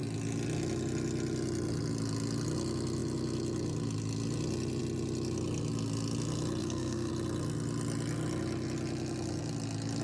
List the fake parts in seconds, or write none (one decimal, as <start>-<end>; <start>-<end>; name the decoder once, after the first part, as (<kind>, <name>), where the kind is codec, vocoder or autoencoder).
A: 6.6-7.1 (codec, SNAC)